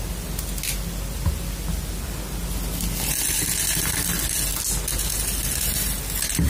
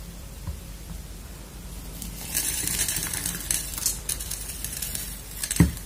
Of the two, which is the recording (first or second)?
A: first